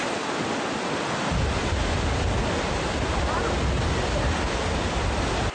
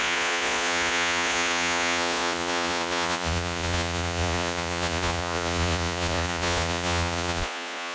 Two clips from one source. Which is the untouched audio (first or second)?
first